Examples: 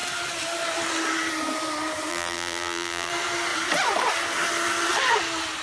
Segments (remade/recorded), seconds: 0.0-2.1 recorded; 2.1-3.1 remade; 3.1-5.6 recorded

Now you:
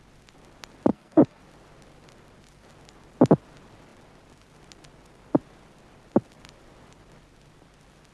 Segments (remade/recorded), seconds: 0.0-0.9 recorded; 0.9-1.4 remade; 1.4-8.1 recorded

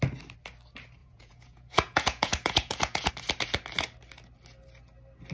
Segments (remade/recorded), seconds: 0.0-1.0 recorded; 1.0-3.1 remade; 3.1-5.3 recorded